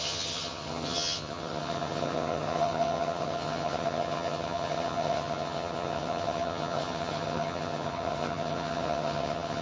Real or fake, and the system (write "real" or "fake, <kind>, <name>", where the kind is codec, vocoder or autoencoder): fake, vocoder, HiFi-GAN